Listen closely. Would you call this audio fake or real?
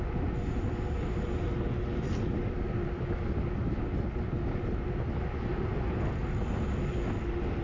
real